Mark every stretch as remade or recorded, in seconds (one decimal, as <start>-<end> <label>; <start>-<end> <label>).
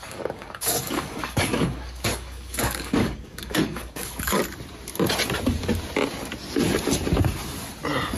0.0-4.4 remade; 4.4-8.2 recorded